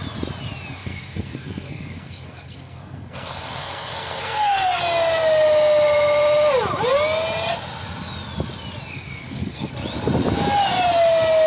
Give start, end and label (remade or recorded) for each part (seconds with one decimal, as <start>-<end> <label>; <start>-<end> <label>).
0.0-0.8 recorded; 0.8-4.8 remade; 4.8-8.9 recorded; 8.9-9.7 remade; 9.7-11.5 recorded